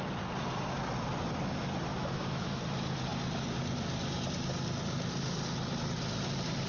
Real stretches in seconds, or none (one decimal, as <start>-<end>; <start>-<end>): 0.0-1.9; 2.6-6.7